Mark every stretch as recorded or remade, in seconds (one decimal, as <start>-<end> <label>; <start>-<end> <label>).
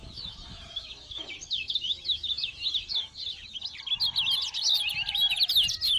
0.0-3.6 remade; 3.6-6.0 recorded